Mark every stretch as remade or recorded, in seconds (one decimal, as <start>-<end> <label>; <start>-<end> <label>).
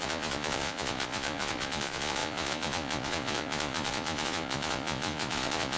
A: 0.0-5.8 remade